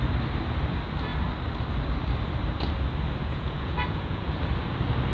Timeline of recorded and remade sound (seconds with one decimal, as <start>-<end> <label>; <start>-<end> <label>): 0.0-3.2 recorded; 3.2-4.3 remade; 4.3-5.1 recorded